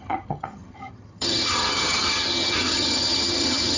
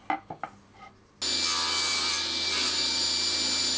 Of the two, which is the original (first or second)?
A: second